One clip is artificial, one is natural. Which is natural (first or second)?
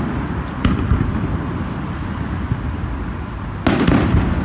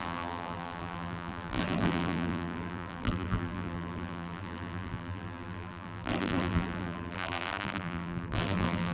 first